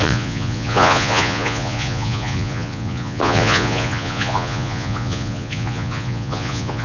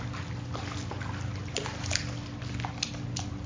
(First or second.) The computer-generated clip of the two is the first